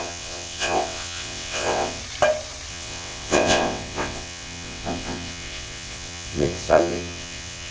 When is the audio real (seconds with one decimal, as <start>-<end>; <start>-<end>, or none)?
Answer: 2.0-2.7